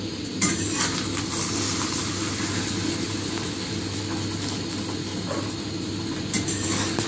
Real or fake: real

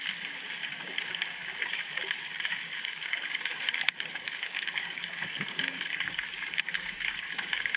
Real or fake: fake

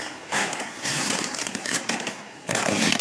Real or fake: fake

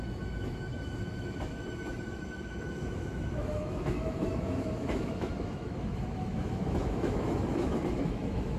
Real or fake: fake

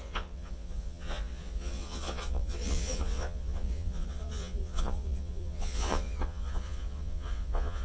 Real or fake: fake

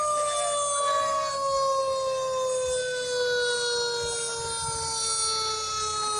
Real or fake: real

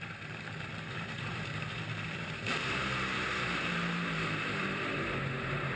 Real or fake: fake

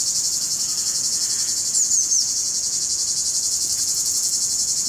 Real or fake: fake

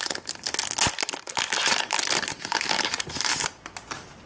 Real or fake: real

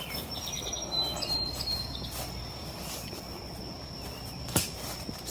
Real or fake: real